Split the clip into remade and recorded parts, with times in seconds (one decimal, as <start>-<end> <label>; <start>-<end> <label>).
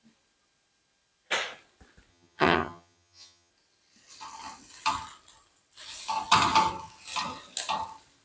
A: 0.0-2.1 recorded; 2.1-3.5 remade; 3.5-8.2 recorded